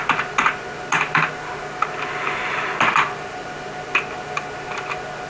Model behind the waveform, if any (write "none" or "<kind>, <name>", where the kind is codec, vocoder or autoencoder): none